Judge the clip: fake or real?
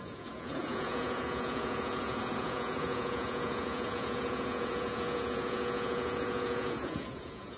fake